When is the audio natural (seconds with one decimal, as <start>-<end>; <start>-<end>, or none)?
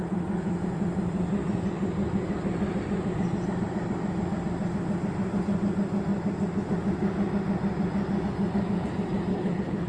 0.0-9.3